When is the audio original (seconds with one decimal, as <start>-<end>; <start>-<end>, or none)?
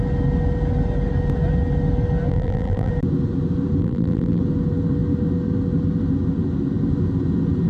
0.0-2.3; 2.9-3.8; 4.4-7.7